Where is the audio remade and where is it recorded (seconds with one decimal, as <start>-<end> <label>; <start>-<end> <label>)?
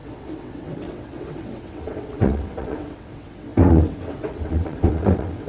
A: 0.0-5.5 remade